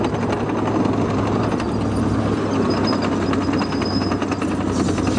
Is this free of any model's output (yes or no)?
yes